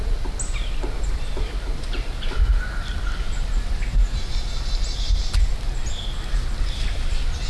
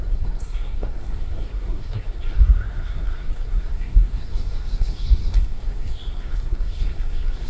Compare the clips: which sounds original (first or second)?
first